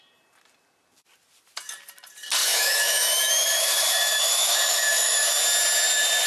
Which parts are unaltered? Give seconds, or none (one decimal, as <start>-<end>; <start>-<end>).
0.0-2.4; 5.4-6.3